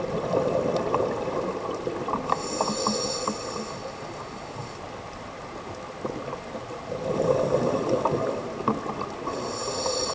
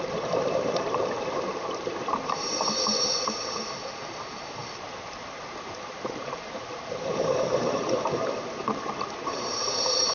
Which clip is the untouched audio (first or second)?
first